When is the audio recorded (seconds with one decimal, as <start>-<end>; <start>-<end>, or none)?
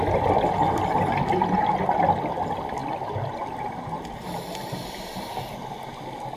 0.0-6.4